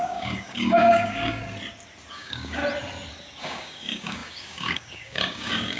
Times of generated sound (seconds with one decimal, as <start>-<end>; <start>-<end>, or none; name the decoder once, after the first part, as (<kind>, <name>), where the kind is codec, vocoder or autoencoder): 0.0-1.4 (codec, DAC); 2.1-2.6; 3.4-5.8